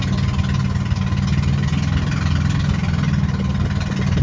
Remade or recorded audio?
recorded